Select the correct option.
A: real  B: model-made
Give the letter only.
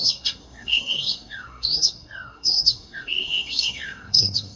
B